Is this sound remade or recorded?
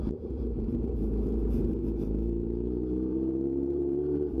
remade